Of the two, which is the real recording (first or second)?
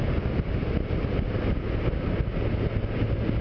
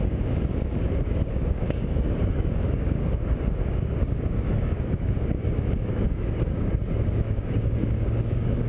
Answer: first